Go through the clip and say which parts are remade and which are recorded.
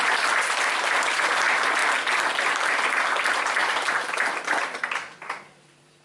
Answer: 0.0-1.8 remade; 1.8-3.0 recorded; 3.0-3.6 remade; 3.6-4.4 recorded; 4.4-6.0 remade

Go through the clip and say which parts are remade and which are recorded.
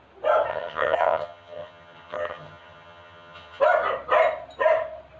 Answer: 0.0-0.5 recorded; 0.5-3.6 remade; 3.6-5.2 recorded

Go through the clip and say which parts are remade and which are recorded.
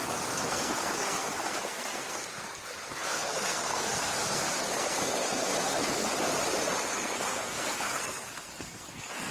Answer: 0.0-6.1 remade; 6.1-6.9 recorded; 6.9-9.3 remade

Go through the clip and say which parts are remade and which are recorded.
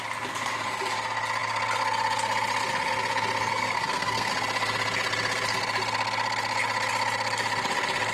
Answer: 0.0-3.5 recorded; 3.5-4.3 remade; 4.3-8.1 recorded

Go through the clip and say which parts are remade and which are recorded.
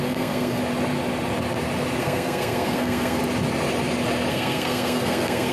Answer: 0.0-0.6 remade; 0.6-2.0 recorded; 2.0-3.2 remade; 3.2-4.3 recorded; 4.3-5.5 remade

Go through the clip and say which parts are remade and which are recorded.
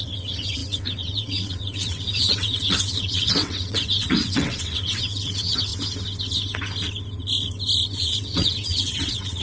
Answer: 0.0-5.7 remade; 5.7-8.0 recorded; 8.0-9.4 remade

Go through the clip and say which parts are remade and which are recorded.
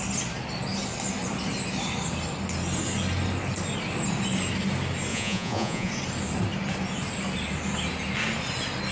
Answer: 0.0-5.1 recorded; 5.1-5.9 remade; 5.9-8.9 recorded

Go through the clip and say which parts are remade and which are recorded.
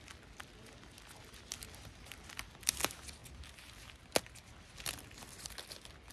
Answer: 0.0-6.1 recorded